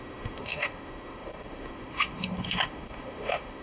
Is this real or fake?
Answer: fake